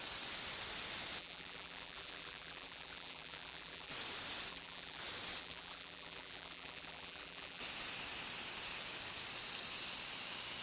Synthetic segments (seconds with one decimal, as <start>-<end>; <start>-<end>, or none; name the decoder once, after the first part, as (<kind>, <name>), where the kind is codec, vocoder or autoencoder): 1.2-3.9 (vocoder, BigVGAN v2); 4.5-5.0; 5.4-7.6